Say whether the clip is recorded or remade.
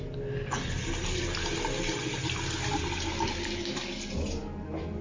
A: recorded